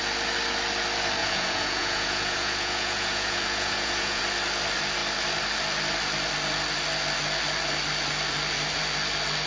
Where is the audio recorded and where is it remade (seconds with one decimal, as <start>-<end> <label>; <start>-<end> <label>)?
0.0-1.2 recorded; 1.2-4.2 remade; 4.2-9.5 recorded